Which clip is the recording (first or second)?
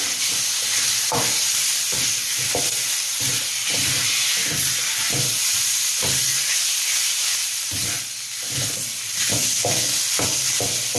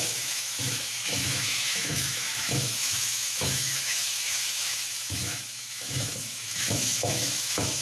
first